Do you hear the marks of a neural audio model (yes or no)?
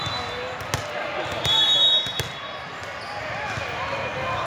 no